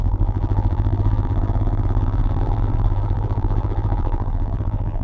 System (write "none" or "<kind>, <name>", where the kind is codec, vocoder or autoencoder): vocoder, BigVGAN v2